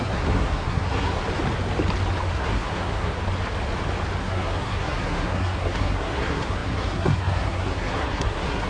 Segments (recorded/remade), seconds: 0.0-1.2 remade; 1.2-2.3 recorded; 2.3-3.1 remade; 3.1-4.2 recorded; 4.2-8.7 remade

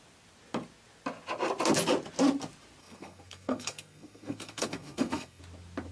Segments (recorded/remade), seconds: 0.0-2.8 recorded; 2.8-5.4 remade; 5.4-5.9 recorded

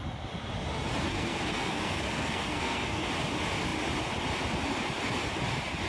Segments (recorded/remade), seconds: 0.0-1.1 recorded; 1.1-3.1 remade; 3.1-5.9 recorded